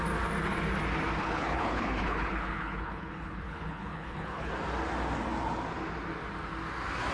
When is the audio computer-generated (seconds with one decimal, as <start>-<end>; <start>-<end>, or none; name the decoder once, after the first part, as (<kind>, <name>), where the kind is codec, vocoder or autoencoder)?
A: 1.2-4.5 (codec, HILCodec)